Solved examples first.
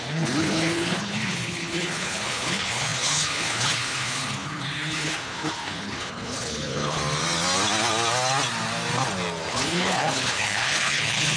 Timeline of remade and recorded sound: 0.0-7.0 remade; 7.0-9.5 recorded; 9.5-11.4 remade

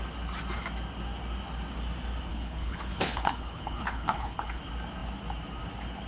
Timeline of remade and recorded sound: 0.0-2.3 recorded; 2.3-4.6 remade; 4.6-6.1 recorded

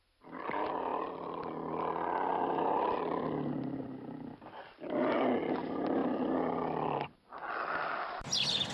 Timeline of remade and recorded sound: 0.0-8.7 recorded

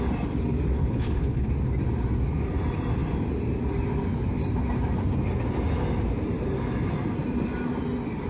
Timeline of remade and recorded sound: 0.0-0.8 recorded; 0.8-1.5 remade; 1.5-8.3 recorded

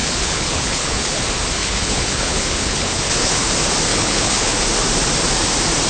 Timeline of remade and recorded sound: 0.0-1.2 remade; 1.2-1.6 recorded; 1.6-3.5 remade; 3.5-3.9 recorded; 3.9-4.6 remade; 4.6-5.9 recorded

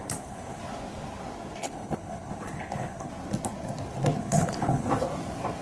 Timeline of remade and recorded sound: 0.0-0.6 remade; 0.6-1.6 recorded; 1.6-3.1 remade; 3.1-4.2 recorded; 4.2-4.9 remade; 4.9-5.6 recorded

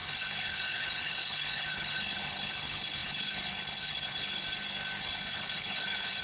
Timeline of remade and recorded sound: 0.0-4.4 remade; 4.4-5.0 recorded; 5.0-6.2 remade

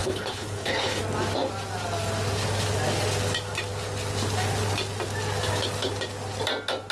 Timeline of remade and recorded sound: 0.0-1.0 remade; 1.0-6.9 recorded